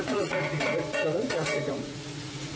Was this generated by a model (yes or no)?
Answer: yes